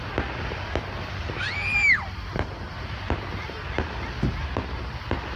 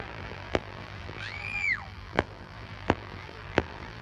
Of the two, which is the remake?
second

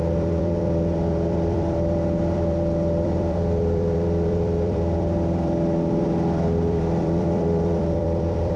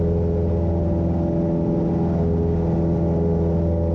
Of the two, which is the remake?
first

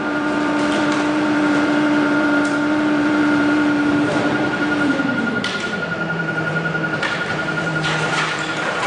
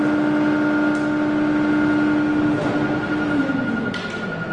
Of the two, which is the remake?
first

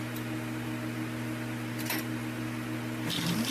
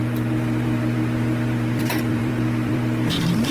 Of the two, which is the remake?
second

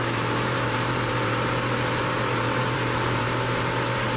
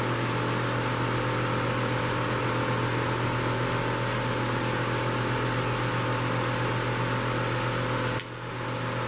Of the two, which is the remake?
first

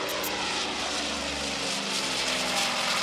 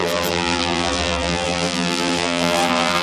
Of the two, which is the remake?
second